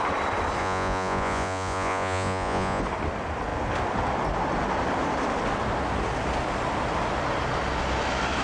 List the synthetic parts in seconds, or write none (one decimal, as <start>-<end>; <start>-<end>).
0.6-2.8